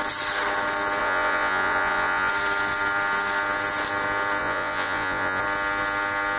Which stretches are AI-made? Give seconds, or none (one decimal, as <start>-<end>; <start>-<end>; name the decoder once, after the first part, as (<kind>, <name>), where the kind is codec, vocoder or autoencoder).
1.0-2.3 (vocoder, Vocos); 4.4-5.4

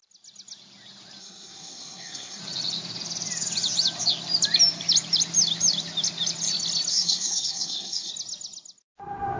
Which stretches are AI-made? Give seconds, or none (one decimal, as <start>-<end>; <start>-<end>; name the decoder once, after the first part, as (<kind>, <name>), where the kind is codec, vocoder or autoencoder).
1.2-2.4 (codec, SNAC); 6.9-8.1

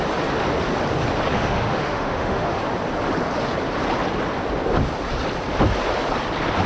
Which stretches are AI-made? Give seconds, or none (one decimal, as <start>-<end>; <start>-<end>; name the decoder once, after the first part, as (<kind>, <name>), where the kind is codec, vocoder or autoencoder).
1.3-2.6 (autoencoder, DAC-VAE)

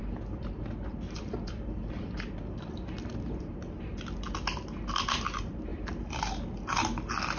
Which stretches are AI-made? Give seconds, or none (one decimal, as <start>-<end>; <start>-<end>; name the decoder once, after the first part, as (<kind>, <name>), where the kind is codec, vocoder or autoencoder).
0.0-3.4 (vocoder, BigVGAN v2); 5.7-6.3

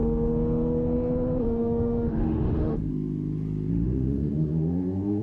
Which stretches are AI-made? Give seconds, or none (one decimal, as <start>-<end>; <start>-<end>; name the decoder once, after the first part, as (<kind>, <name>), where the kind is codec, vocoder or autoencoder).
1.4-2.9 (autoencoder, DAC-VAE); 3.7-5.2

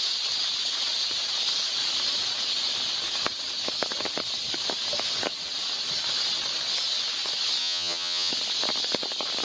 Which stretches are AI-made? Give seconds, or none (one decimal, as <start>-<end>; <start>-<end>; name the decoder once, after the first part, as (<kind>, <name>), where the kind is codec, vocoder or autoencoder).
7.6-8.3 (vocoder, HiFi-GAN)

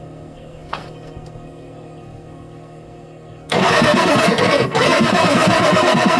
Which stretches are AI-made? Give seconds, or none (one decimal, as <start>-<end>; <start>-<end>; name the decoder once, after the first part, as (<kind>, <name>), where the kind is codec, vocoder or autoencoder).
0.0-6.2 (codec, SNAC)

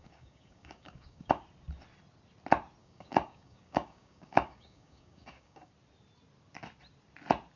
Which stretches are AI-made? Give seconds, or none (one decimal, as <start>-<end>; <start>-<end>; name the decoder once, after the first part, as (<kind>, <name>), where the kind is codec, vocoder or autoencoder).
0.0-1.4 (codec, DAC); 2.8-5.7